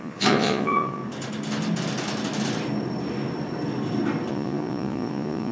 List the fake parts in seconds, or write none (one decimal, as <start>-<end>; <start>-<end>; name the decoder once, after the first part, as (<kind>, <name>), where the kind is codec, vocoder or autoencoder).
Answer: 0.0-1.0 (vocoder, Vocos); 4.3-5.5